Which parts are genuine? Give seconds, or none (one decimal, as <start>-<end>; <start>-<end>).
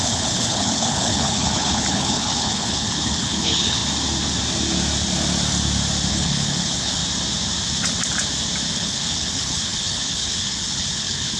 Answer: 3.8-6.1; 7.0-8.7